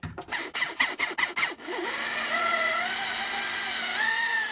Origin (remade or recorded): recorded